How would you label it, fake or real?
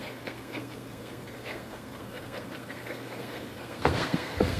fake